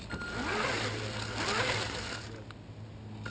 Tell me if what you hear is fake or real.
real